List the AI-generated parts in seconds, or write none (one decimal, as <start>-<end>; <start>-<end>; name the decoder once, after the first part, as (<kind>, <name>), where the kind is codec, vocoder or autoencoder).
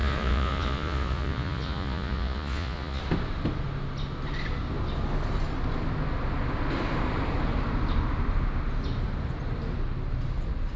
0.0-3.0 (vocoder, Vocos)